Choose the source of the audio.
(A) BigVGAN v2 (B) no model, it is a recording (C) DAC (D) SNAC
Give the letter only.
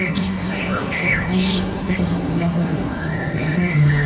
D